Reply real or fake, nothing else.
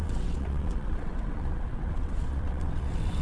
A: fake